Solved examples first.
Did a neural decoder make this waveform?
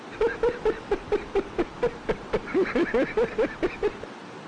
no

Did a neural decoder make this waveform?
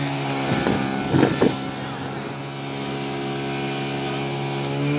no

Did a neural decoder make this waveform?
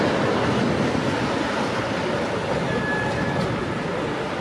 no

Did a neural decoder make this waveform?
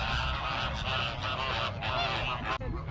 no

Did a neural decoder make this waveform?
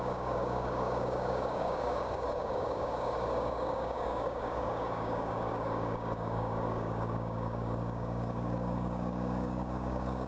yes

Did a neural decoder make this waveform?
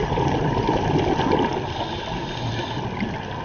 no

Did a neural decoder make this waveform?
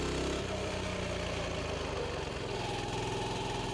no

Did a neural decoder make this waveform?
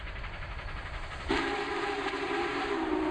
yes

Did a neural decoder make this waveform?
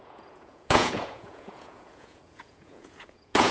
yes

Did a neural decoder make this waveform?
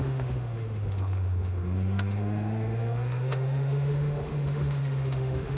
yes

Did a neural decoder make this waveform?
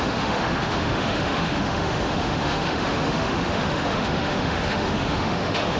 yes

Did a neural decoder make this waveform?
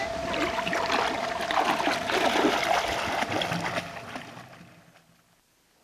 no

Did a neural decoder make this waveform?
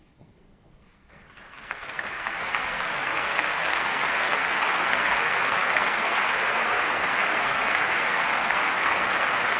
yes